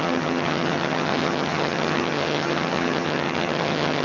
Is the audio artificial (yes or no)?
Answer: yes